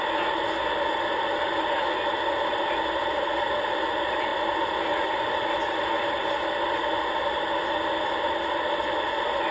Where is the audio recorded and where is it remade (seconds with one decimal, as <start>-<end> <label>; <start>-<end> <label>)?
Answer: 0.0-9.5 recorded